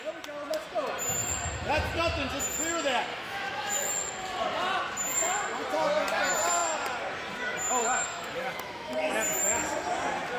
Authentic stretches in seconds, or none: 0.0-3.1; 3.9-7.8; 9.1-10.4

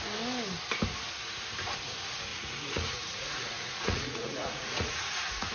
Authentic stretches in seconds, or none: 0.0-2.3